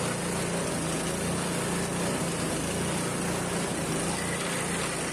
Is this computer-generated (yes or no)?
no